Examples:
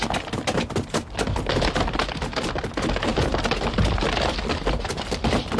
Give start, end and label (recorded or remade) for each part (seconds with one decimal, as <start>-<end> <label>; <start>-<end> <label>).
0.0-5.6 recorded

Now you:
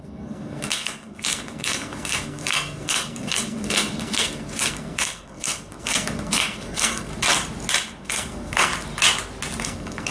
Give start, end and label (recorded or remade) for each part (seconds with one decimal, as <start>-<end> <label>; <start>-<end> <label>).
0.0-7.1 remade; 7.1-8.0 recorded; 8.0-8.7 remade; 8.7-9.6 recorded; 9.6-10.1 remade

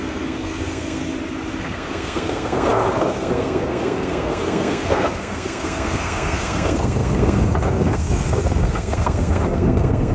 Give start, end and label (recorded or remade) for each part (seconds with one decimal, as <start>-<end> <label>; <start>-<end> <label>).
0.0-1.0 remade; 1.0-1.6 recorded; 1.6-10.1 remade